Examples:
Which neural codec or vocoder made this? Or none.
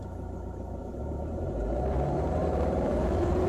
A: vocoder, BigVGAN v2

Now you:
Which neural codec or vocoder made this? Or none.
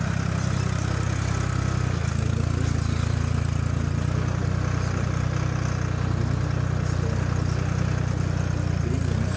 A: none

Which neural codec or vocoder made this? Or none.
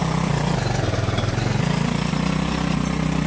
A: none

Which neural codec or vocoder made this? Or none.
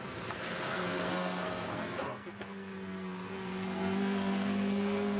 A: codec, SNAC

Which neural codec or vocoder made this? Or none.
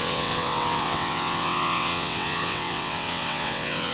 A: vocoder, WaveNeXt